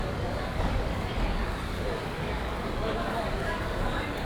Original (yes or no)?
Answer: no